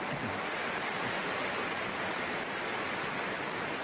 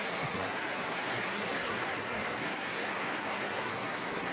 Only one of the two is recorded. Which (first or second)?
first